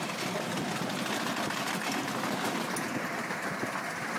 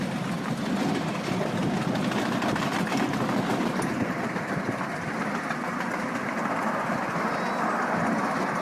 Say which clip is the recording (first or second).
first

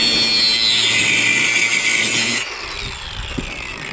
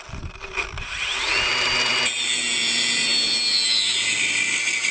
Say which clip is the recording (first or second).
first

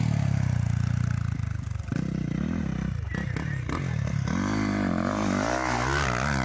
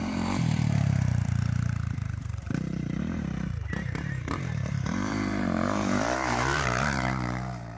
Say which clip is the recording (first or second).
first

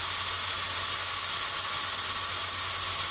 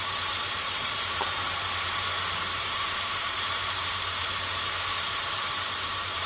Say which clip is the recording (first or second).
first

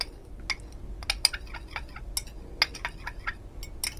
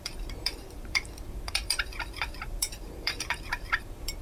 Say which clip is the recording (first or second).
first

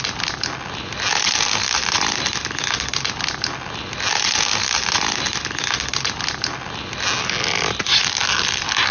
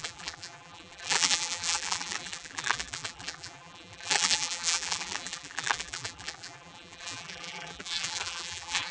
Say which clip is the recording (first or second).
first